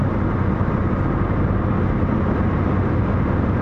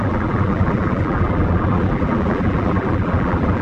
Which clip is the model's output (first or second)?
second